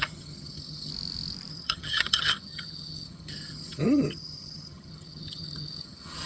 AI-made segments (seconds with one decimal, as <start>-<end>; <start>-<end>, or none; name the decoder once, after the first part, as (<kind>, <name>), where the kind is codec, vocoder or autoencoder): 0.0-0.9 (vocoder, HiFi-GAN); 1.5-6.3